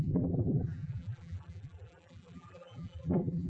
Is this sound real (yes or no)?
no